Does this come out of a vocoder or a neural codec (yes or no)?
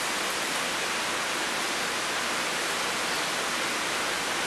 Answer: no